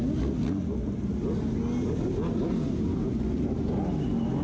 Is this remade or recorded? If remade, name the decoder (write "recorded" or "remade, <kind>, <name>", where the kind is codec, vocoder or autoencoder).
recorded